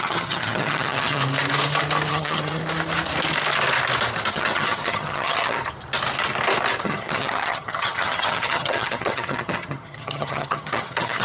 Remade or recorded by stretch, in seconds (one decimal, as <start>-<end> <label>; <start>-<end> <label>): 0.0-1.2 remade; 1.2-2.1 recorded; 2.1-2.6 remade; 2.6-4.3 recorded; 4.3-5.6 remade; 5.6-6.8 recorded; 6.8-11.2 remade